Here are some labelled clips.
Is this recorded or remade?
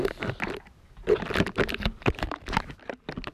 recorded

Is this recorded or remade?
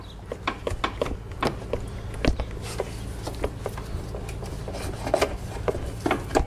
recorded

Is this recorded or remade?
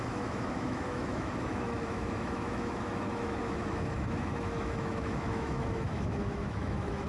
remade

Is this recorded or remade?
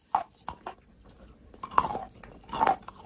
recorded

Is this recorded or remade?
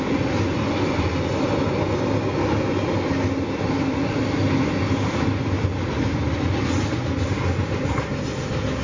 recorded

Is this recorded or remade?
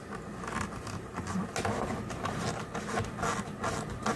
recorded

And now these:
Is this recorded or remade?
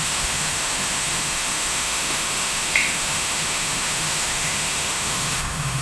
remade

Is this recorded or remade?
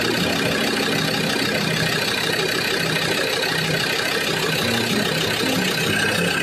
recorded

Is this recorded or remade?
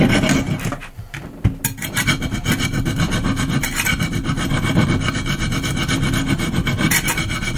recorded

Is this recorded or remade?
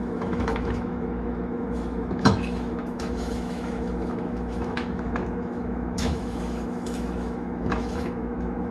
remade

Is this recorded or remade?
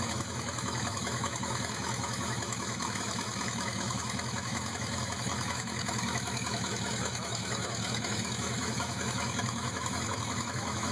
remade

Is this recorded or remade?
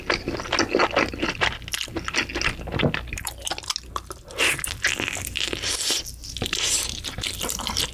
recorded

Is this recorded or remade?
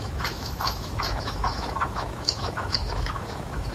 remade